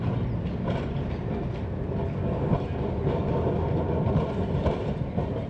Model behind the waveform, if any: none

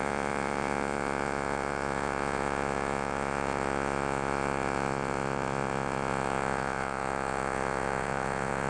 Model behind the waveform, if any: vocoder, Vocos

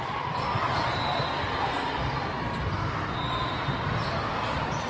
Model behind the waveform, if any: none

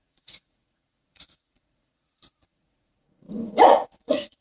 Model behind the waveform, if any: vocoder, Vocos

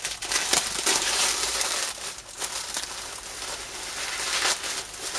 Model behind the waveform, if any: none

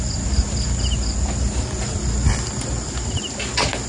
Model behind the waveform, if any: none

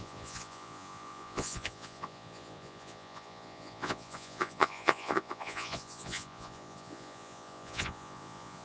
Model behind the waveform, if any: vocoder, Vocos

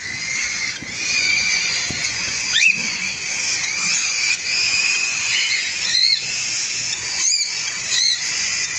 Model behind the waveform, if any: vocoder, Vocos